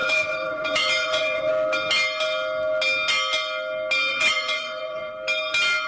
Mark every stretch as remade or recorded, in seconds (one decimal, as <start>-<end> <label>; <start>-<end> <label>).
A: 0.0-1.5 remade; 1.5-4.1 recorded; 4.1-5.1 remade; 5.1-5.9 recorded